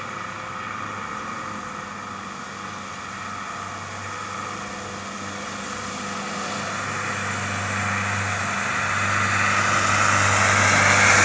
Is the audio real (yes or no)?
yes